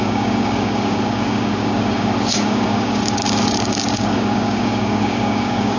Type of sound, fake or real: fake